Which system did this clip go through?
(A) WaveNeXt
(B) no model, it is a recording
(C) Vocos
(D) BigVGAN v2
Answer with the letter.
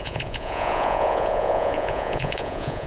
C